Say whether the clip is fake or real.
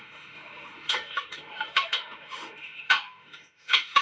fake